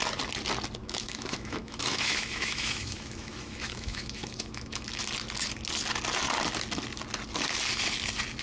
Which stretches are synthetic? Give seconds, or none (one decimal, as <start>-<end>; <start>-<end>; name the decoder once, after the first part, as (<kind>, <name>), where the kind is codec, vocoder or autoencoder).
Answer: 0.8-5.0 (autoencoder, DAC-VAE)